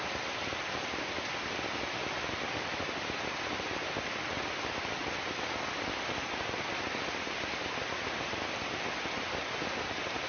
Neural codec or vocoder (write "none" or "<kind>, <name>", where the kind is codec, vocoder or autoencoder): none